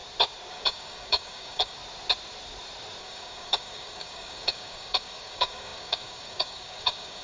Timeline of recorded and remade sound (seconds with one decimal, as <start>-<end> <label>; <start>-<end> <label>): 0.0-0.5 recorded; 0.5-1.8 remade; 1.8-3.0 recorded; 3.0-7.2 remade